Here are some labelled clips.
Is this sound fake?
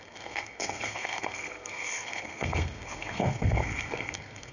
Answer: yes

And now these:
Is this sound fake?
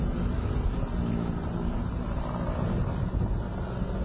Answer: no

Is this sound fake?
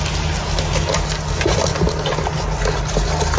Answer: no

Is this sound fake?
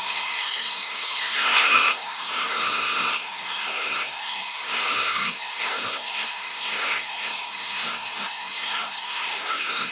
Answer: yes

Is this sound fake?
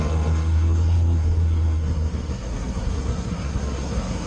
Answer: yes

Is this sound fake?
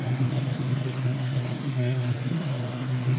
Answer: yes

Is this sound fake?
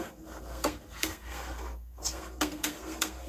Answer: yes